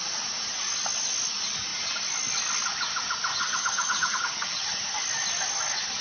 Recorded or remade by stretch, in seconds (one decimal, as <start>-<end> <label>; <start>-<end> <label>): 0.0-3.3 recorded; 3.3-4.8 remade; 4.8-6.0 recorded